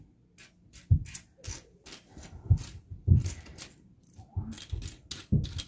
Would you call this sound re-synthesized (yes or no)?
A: no